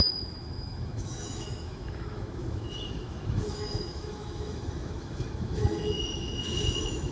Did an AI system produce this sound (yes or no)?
yes